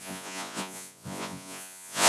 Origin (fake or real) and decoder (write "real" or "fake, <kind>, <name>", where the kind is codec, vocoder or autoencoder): fake, vocoder, Vocos